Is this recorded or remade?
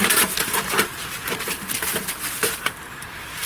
remade